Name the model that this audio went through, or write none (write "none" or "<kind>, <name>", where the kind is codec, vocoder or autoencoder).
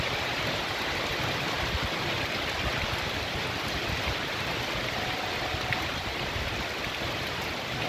none